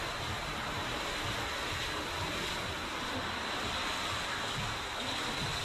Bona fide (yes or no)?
yes